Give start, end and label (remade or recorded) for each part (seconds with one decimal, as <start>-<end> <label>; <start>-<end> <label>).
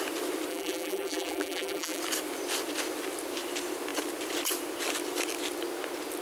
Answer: 0.0-0.5 recorded; 0.5-2.0 remade; 2.0-6.2 recorded